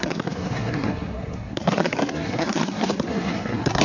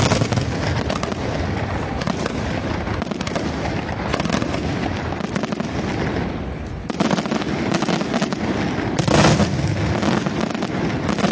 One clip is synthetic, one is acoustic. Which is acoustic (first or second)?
second